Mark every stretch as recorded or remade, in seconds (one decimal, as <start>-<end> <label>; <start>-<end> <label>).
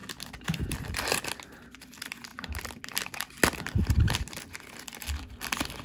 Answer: 0.0-2.3 recorded; 2.3-2.8 remade; 2.8-5.8 recorded